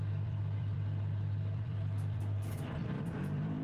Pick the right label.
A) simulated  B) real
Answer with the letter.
A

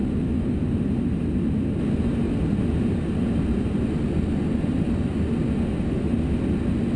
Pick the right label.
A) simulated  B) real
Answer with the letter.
B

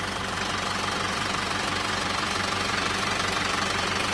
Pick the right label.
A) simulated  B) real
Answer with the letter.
A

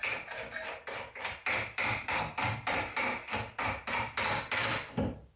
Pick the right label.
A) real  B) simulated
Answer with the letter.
A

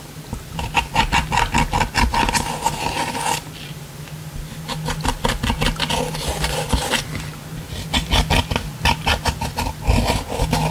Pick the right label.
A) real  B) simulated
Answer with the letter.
A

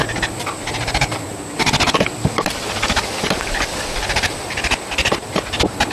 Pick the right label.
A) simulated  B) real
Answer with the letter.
B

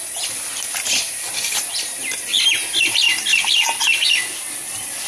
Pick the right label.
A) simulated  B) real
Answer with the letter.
B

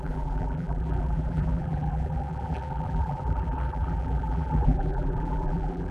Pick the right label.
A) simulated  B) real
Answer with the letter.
A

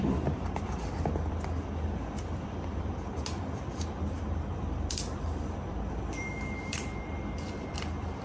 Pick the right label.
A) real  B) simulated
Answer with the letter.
B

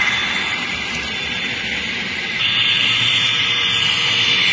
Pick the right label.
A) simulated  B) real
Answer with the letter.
A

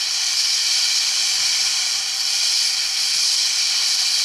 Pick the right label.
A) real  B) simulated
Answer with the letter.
A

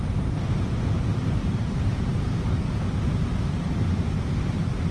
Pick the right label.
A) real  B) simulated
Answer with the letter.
B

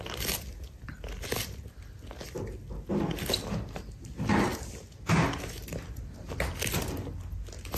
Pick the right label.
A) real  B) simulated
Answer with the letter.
A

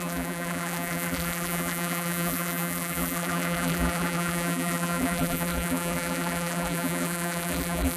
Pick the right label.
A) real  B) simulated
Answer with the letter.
B